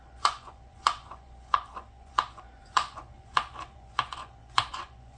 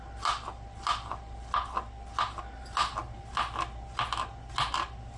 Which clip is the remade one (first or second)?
first